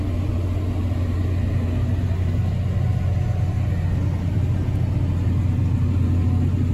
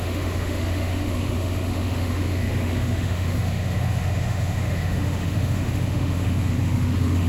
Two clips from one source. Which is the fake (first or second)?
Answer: second